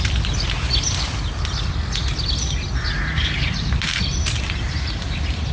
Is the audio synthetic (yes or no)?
no